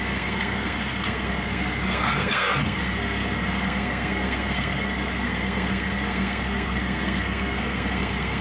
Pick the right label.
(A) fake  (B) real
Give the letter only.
A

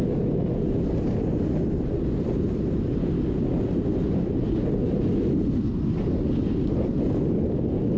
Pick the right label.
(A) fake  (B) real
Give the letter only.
B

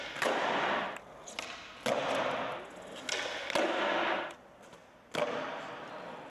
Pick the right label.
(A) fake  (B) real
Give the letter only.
B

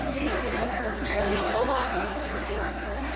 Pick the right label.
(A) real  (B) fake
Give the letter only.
B